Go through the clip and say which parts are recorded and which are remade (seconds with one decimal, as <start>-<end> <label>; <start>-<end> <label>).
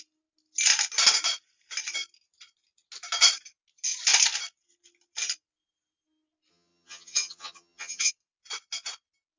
0.0-6.5 recorded; 6.5-8.1 remade; 8.1-9.4 recorded